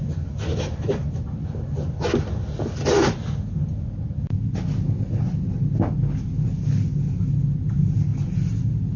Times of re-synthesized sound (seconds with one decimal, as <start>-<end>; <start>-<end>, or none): none